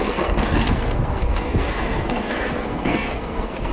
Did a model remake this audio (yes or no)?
yes